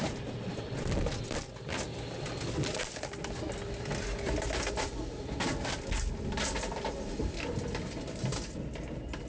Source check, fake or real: real